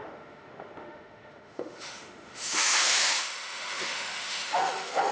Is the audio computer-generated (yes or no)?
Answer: yes